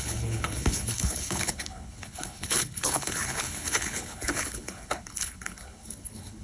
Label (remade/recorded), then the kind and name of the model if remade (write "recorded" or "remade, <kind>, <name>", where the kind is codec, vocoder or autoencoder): remade, codec, HILCodec